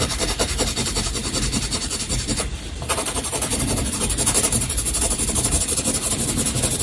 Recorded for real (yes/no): no